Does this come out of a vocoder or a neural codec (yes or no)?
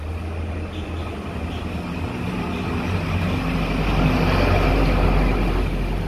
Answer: no